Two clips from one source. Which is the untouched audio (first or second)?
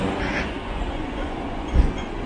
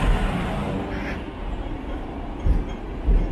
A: second